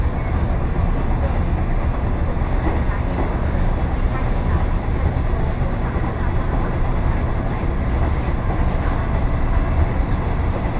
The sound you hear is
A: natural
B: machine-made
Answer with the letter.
A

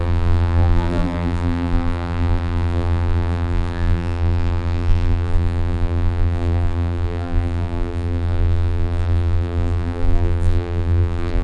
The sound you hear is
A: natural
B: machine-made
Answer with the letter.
B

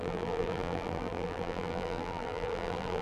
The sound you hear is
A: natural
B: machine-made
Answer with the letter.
B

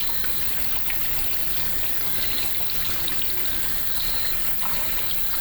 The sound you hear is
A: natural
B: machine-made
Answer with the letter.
A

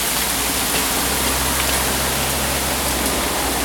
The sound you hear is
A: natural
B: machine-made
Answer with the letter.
A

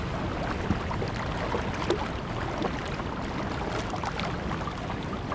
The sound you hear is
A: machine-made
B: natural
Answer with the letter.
B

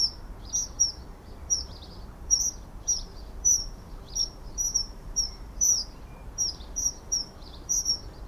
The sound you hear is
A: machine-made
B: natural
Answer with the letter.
A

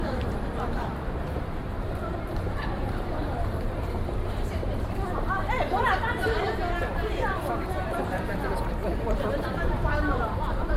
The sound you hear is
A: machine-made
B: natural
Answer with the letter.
A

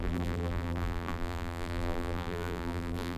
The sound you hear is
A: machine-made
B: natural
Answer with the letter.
A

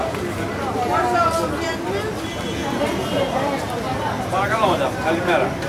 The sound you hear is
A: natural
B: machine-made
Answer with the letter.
A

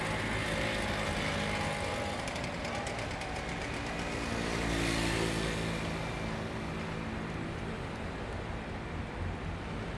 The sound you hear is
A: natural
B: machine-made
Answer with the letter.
A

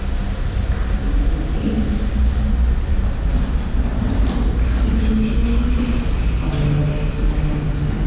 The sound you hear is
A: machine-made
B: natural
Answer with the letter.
B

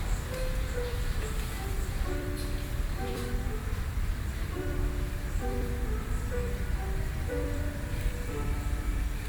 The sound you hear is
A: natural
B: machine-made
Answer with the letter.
B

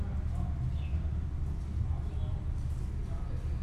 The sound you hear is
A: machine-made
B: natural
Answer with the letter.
B